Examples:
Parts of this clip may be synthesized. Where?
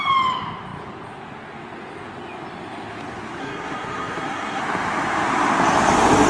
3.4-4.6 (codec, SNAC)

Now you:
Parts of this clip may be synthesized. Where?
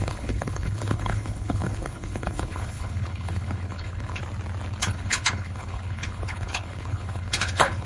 0.0-4.2 (codec, HILCodec); 4.8-7.9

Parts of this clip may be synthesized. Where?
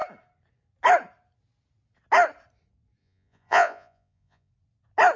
3.0-4.5 (vocoder, Vocos)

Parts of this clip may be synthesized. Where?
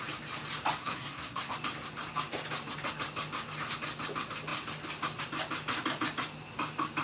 0.8-1.5 (codec, SNAC)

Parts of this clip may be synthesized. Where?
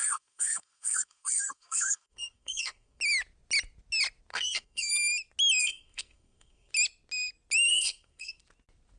0.0-3.0 (codec, SNAC); 4.3-4.9; 5.6-6.7; 7.7-8.4